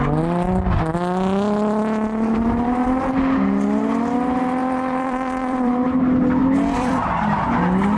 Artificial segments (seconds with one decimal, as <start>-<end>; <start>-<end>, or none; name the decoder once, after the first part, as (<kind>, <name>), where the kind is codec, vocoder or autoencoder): 4.6-5.7 (vocoder, BigVGAN v2); 6.4-7.1